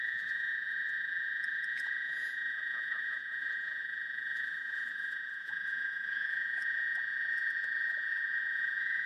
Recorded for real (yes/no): no